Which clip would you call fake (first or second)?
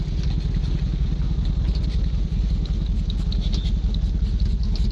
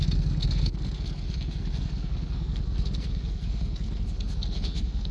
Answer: second